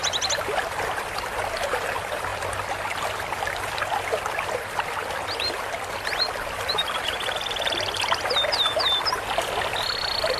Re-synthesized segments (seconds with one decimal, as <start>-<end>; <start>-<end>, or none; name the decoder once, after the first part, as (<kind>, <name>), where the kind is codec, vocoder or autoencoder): none